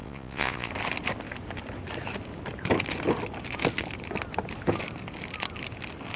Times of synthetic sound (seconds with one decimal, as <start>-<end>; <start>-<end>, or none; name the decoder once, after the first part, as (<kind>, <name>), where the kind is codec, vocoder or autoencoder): 0.0-0.7 (vocoder, Vocos)